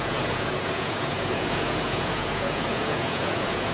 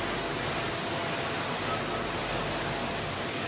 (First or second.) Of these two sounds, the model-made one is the first